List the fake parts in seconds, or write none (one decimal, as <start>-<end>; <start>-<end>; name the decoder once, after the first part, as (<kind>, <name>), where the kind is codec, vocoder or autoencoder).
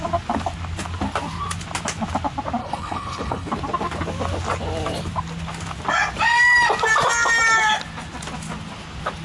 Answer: 2.6-3.5 (codec, HILCodec)